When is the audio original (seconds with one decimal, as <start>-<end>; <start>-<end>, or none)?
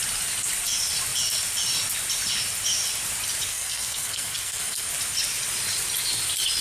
0.0-3.5; 4.9-6.6